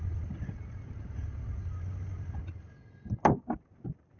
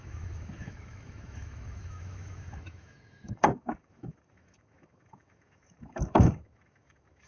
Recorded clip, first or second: first